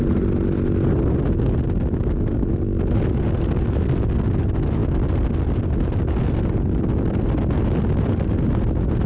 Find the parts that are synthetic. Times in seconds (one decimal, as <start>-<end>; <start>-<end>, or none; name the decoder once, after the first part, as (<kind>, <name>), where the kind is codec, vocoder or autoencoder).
none

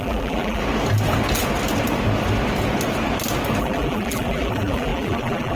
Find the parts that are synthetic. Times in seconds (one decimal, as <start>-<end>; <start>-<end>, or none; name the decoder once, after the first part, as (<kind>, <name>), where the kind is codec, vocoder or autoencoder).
0.0-0.6 (vocoder, BigVGAN v2); 3.6-5.6

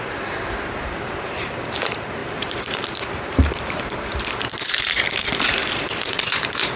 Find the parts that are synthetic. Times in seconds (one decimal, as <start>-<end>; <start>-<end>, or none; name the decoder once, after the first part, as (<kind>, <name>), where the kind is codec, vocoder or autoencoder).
0.0-6.8 (vocoder, BigVGAN v2)

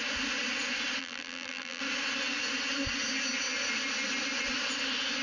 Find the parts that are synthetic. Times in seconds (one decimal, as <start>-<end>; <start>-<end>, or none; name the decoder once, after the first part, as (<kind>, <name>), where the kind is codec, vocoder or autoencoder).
1.0-1.8 (vocoder, BigVGAN v2)